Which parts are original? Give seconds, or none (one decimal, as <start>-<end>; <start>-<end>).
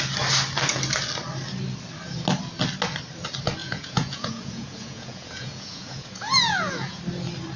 0.0-3.6; 7.0-7.6